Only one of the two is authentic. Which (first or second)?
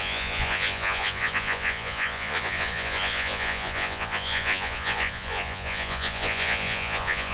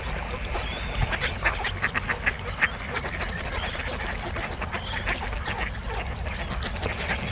second